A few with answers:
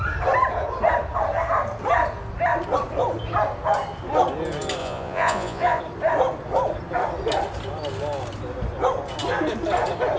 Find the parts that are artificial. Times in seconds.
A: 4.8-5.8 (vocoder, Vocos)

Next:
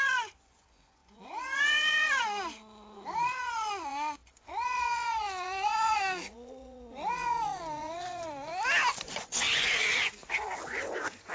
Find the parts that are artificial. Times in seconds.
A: 0.0-8.5 (vocoder, Vocos); 9.1-11.3

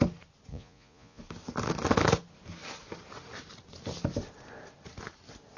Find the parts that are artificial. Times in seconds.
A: 0.5-1.2 (vocoder, Vocos)

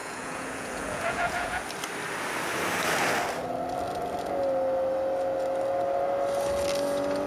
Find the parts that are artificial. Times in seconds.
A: 0.0-1.6 (vocoder, Vocos)

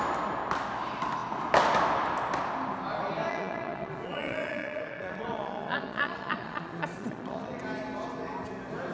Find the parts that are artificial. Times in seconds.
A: 3.3-7.6 (vocoder, Vocos)

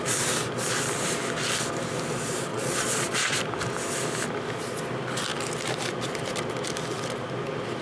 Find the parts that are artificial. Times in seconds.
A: 2.5-3.4 (vocoder, Vocos)

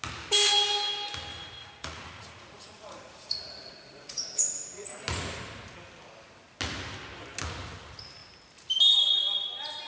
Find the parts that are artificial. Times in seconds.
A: 1.3-5.0 (vocoder, Vocos)